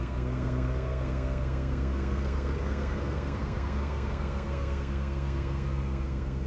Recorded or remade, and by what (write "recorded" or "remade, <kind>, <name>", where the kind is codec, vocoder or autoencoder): remade, codec, SNAC